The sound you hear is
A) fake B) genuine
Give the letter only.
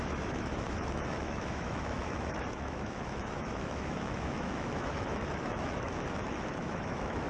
A